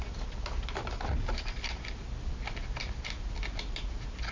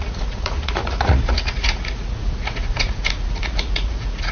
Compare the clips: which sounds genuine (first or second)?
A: first